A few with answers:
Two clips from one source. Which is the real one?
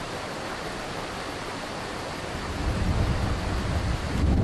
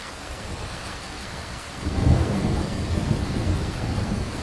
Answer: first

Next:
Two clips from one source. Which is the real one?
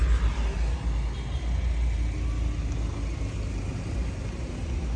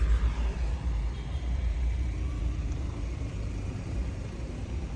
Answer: first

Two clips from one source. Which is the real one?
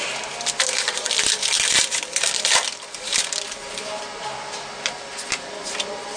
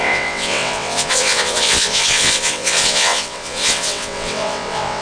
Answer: first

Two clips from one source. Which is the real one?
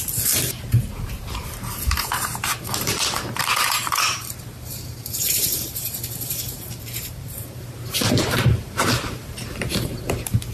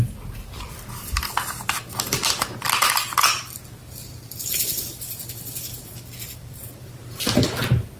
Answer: second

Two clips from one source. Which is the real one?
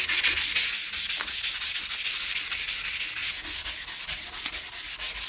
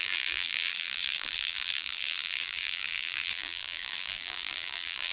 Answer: first